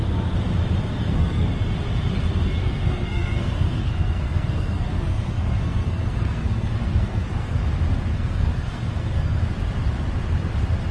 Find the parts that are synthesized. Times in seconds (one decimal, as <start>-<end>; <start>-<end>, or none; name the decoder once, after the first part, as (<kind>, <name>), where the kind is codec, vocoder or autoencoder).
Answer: 0.9-1.5 (codec, SNAC); 2.6-7.6; 8.1-9.4